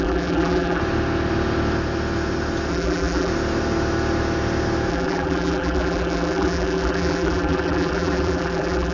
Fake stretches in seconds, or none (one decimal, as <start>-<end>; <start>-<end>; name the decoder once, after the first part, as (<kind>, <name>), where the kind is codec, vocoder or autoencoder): 0.0-0.8 (vocoder, BigVGAN v2); 2.7-3.3; 4.9-8.9